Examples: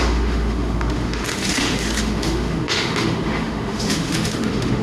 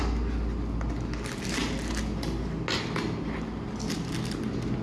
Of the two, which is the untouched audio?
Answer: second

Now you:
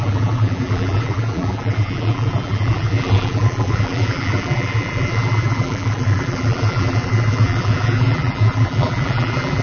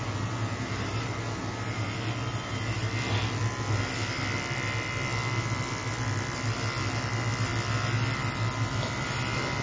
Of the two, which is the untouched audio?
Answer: second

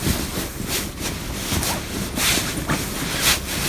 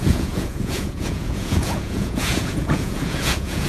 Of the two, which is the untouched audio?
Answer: first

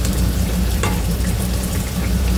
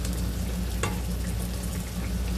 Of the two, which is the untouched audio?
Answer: second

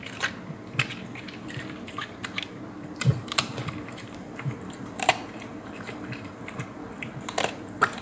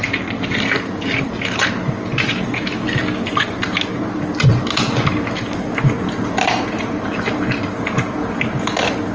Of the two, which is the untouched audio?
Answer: second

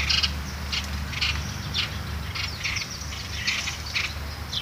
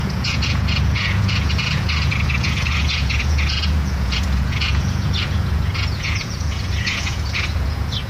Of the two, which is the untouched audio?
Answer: first